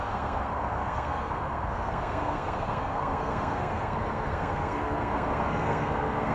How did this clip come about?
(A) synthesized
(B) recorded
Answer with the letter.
A